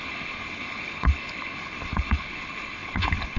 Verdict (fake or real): fake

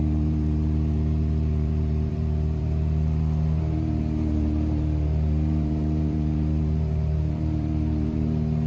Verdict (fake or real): fake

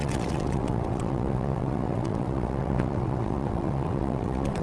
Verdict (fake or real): fake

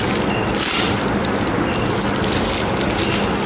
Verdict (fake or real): real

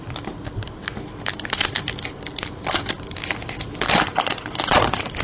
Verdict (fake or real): real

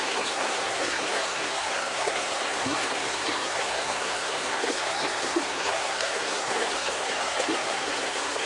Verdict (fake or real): fake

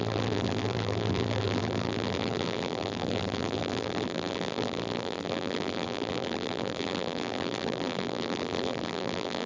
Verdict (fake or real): fake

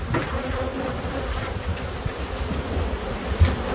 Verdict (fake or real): real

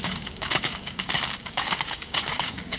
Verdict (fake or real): fake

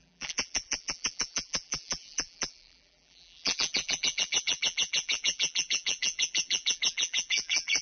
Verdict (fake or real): fake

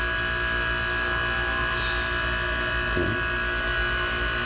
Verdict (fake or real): real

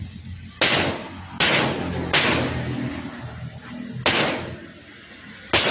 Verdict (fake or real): real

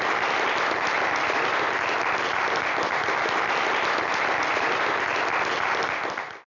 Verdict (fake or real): real